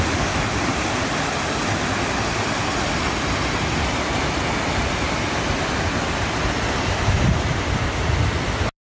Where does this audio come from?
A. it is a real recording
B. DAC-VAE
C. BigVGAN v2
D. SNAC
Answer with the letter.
A